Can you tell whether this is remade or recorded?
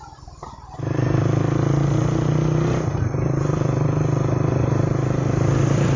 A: recorded